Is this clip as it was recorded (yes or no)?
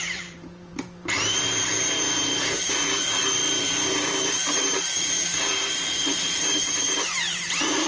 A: no